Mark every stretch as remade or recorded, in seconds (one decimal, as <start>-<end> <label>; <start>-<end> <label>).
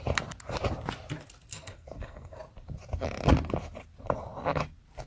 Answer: 0.0-1.5 recorded; 1.5-2.4 remade; 2.4-5.1 recorded